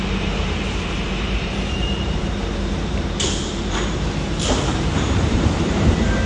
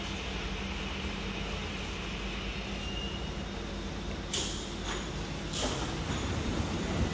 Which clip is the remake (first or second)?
first